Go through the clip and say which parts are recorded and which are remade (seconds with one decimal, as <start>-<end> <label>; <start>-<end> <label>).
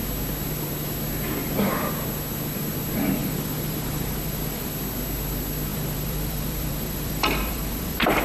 0.0-3.2 recorded; 3.2-4.7 remade; 4.7-5.7 recorded; 5.7-8.2 remade